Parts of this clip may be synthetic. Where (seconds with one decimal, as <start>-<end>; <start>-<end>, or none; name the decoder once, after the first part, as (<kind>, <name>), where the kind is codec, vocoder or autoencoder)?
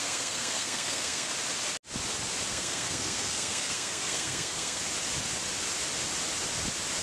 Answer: 0.0-1.3 (codec, SNAC); 2.5-4.8